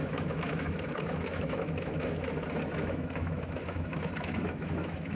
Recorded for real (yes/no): no